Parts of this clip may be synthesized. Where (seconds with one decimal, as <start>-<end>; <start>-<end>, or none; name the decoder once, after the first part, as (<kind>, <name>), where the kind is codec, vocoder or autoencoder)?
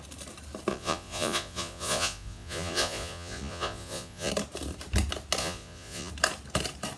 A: 0.7-4.3 (vocoder, Vocos); 5.4-6.1